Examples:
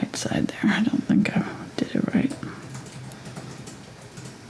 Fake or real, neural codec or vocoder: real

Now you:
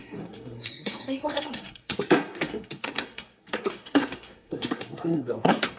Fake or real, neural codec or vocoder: fake, codec, SNAC